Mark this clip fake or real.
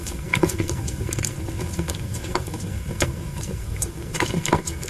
fake